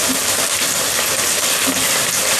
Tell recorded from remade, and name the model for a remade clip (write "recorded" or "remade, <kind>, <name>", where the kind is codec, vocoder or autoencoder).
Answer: recorded